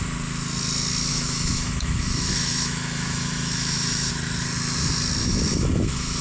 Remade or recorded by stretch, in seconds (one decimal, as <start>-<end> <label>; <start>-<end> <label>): 0.0-1.1 recorded; 1.1-4.1 remade; 4.1-5.2 recorded; 5.2-6.2 remade